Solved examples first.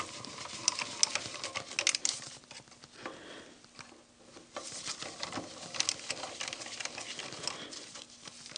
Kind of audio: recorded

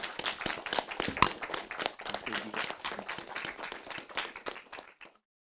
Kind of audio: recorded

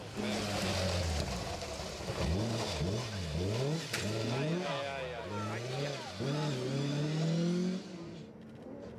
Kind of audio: recorded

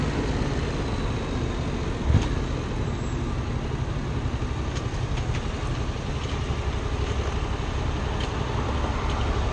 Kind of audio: recorded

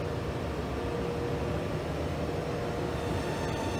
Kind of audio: recorded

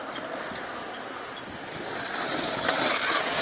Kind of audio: remade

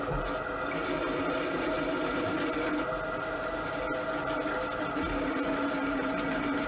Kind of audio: recorded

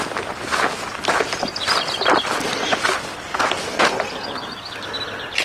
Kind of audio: recorded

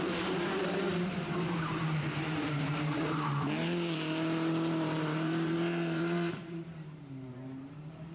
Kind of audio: remade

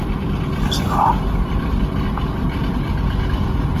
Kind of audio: remade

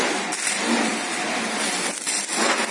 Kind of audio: recorded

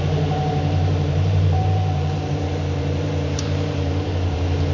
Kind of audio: remade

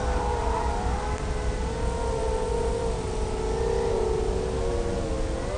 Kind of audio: recorded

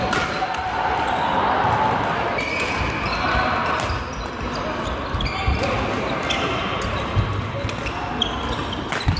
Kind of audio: recorded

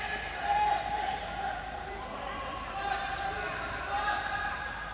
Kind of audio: remade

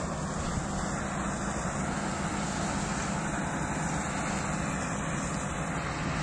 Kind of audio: recorded